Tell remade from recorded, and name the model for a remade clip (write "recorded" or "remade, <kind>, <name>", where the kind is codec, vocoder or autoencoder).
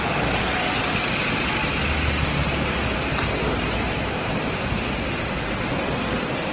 recorded